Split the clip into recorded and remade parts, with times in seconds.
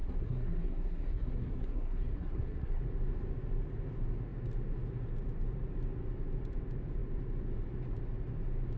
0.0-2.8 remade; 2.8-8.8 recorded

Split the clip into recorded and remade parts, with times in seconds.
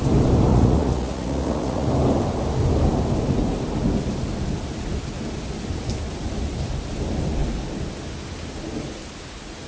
0.0-0.5 recorded; 0.5-1.9 remade; 1.9-9.7 recorded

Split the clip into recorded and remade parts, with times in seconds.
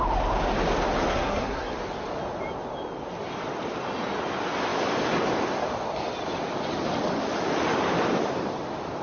0.0-1.1 recorded; 1.1-1.7 remade; 1.7-9.0 recorded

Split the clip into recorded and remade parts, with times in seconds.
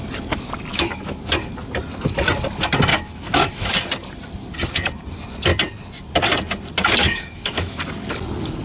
0.0-0.7 recorded; 0.7-1.2 remade; 1.2-2.9 recorded; 2.9-3.7 remade; 3.7-7.0 recorded; 7.0-7.8 remade; 7.8-8.6 recorded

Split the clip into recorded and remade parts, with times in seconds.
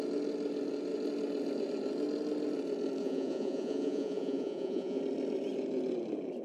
0.0-3.0 recorded; 3.0-5.0 remade; 5.0-6.4 recorded